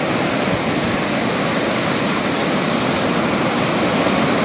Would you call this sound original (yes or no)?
yes